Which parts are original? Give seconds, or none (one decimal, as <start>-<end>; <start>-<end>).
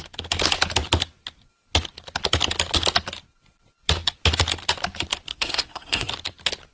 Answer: 0.0-5.3; 6.1-6.7